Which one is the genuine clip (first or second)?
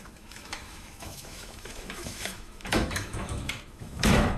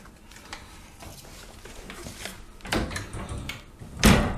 second